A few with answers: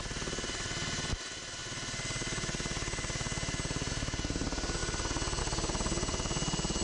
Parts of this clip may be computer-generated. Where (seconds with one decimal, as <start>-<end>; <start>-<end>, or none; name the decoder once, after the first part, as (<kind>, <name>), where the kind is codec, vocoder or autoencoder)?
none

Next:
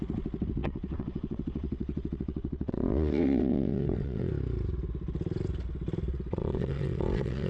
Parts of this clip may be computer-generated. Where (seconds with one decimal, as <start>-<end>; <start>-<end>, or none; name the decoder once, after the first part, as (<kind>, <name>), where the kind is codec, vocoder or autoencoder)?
0.6-4.3 (vocoder, WaveNeXt); 6.1-7.5

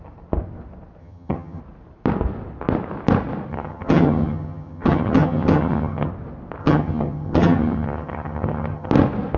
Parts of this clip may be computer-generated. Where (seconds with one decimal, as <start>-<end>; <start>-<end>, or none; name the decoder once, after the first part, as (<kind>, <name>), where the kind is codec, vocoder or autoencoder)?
1.0-1.6 (vocoder, HiFi-GAN); 3.5-6.1; 6.6-8.9

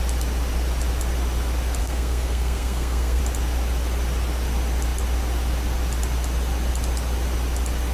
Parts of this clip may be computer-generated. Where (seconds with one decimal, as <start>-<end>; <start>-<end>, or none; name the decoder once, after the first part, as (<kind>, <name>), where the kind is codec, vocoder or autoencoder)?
1.8-3.2 (codec, SNAC)